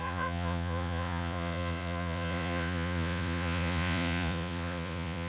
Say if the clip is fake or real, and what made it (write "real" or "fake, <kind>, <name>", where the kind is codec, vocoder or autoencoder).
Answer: fake, vocoder, Vocos